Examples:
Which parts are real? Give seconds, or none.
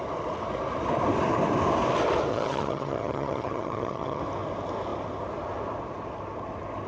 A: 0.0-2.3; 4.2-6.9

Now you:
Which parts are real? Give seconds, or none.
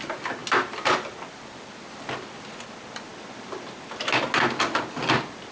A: 0.0-5.5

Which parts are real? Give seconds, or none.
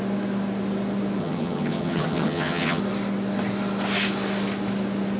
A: 0.0-1.2; 2.8-5.2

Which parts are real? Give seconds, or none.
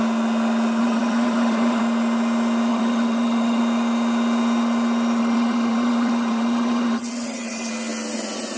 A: 0.0-0.8; 1.8-2.7; 3.6-5.2; 7.7-8.6